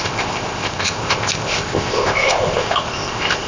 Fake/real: fake